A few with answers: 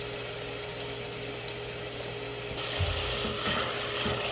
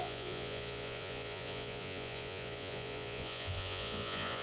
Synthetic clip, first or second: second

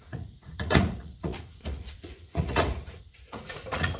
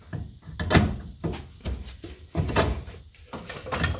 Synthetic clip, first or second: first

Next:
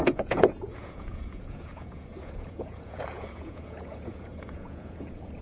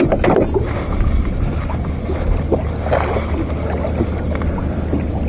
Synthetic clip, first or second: first